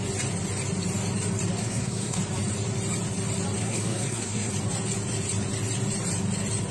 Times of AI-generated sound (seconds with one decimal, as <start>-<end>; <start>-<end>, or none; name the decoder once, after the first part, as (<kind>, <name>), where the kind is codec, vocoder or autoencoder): 1.6-2.2 (codec, SNAC); 3.6-4.5